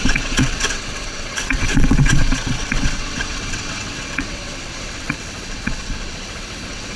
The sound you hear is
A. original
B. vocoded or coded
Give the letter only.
B